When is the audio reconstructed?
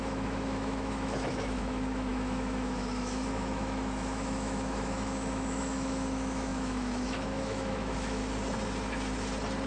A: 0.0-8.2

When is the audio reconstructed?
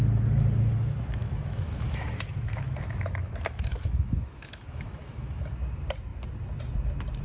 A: 1.2-5.5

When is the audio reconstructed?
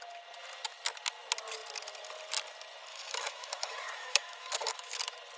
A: 2.9-5.0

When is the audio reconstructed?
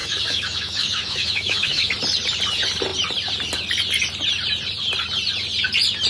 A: 0.0-1.9